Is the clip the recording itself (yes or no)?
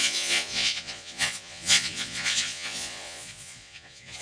no